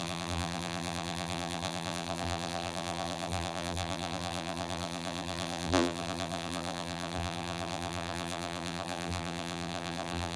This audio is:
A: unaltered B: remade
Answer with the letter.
B